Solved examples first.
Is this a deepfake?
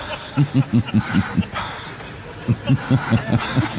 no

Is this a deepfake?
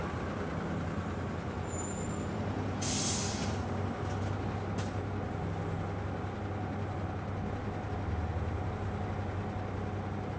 no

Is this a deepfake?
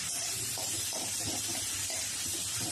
no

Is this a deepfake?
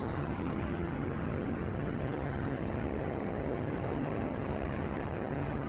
yes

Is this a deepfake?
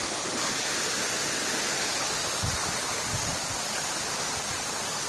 no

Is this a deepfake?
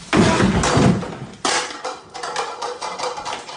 no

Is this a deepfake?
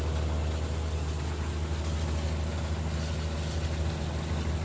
no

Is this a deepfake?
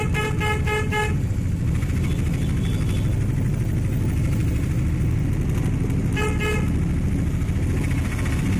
no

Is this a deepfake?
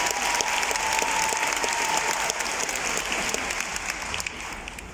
no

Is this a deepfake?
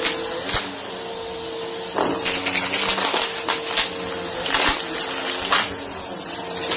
no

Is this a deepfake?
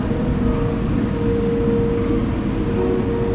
no